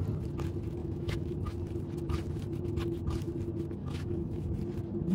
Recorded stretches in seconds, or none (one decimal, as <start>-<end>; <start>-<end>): 0.0-0.8; 1.4-3.8; 4.5-5.1